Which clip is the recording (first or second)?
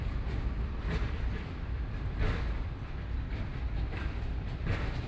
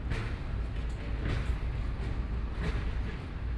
second